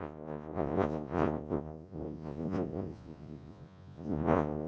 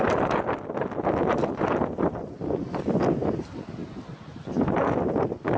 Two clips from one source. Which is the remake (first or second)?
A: first